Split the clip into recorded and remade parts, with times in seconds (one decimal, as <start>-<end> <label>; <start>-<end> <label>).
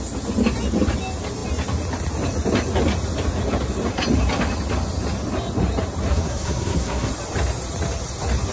0.0-6.1 recorded; 6.1-7.1 remade; 7.1-8.5 recorded